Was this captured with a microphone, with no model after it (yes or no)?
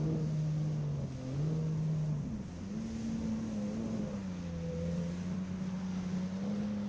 yes